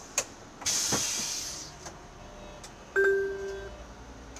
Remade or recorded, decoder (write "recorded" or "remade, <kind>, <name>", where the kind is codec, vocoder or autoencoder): recorded